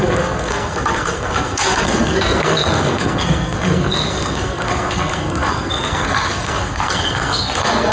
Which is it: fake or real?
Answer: fake